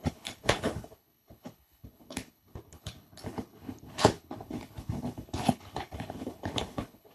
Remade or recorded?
remade